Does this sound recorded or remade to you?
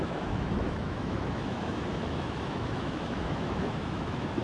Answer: remade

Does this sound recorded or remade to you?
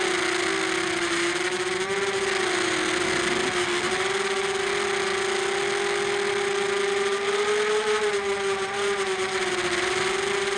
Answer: recorded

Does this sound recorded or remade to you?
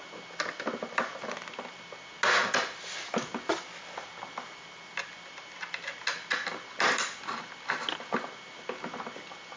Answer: recorded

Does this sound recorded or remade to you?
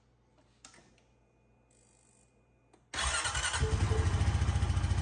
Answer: recorded